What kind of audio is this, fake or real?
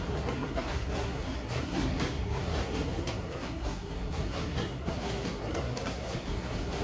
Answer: fake